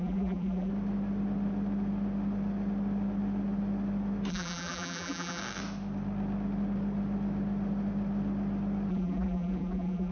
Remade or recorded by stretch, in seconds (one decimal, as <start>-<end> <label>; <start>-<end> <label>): 0.0-0.7 remade; 0.7-4.3 recorded; 4.3-5.4 remade; 5.4-8.9 recorded; 8.9-10.1 remade